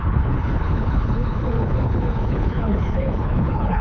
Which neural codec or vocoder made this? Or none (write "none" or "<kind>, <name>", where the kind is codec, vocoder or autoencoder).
codec, HILCodec